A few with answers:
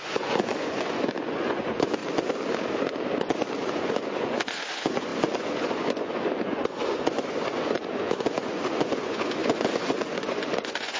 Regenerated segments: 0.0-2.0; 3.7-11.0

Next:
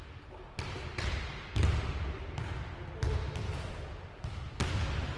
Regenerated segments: none

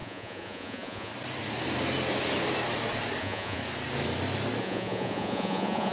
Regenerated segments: 0.0-1.1; 3.2-3.6; 4.6-5.9